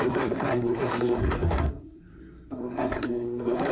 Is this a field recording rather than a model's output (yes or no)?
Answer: no